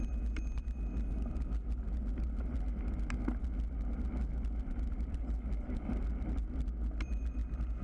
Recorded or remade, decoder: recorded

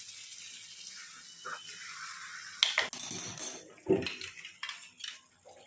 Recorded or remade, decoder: recorded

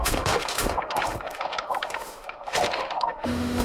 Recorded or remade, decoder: remade, autoencoder, DAC-VAE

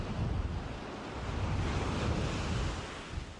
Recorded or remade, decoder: recorded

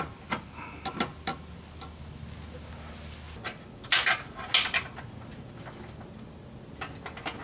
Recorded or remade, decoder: recorded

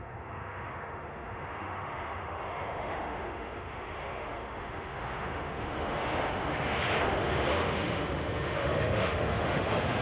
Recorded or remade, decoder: remade, autoencoder, DAC-VAE